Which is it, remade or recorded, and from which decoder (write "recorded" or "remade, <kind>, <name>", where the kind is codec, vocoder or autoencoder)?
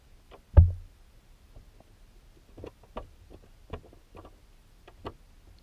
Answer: recorded